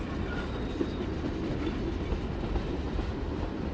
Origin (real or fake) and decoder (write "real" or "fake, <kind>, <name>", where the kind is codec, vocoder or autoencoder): real